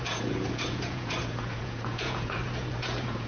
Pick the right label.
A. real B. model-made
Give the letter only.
B